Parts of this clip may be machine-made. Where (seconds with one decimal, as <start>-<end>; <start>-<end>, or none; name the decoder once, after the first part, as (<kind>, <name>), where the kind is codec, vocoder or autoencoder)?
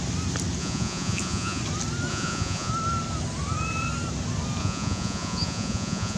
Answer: 0.6-1.6 (vocoder, Vocos); 2.1-2.7; 4.6-6.2